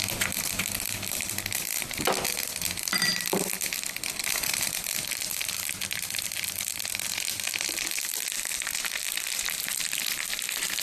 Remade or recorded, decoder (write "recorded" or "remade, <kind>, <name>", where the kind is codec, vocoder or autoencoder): recorded